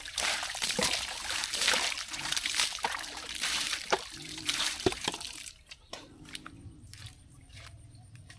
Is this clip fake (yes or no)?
yes